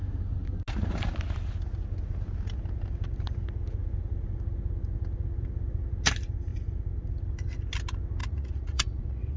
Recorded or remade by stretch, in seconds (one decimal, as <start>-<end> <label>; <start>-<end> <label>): 0.0-8.2 recorded; 8.2-9.4 remade